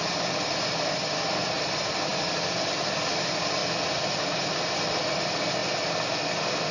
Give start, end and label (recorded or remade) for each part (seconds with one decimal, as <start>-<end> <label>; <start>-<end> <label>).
0.0-3.6 remade; 3.6-5.1 recorded; 5.1-5.6 remade; 5.6-6.3 recorded; 6.3-6.7 remade